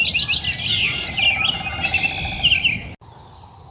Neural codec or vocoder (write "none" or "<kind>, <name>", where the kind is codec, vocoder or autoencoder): none